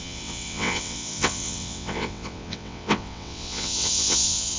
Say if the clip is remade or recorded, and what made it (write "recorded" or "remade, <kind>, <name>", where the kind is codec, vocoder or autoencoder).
remade, vocoder, WaveNeXt